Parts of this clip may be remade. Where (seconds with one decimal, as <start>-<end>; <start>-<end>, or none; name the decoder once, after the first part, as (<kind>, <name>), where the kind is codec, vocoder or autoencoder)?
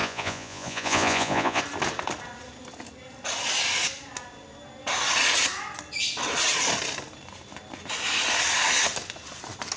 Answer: 0.0-1.6 (vocoder, Vocos)